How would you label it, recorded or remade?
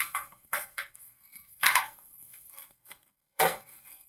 remade